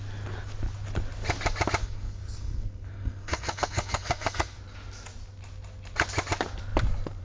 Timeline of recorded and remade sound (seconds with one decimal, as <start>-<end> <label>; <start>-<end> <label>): 0.0-1.8 recorded; 1.8-4.6 remade; 4.6-7.2 recorded